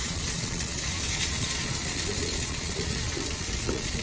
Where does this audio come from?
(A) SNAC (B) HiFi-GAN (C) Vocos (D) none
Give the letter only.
C